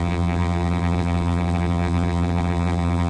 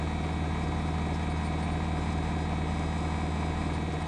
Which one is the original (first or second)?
second